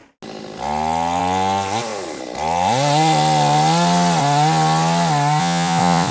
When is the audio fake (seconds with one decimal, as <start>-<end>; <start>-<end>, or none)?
5.4-6.1